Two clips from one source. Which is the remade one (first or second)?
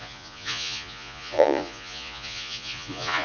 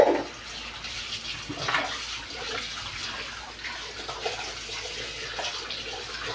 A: first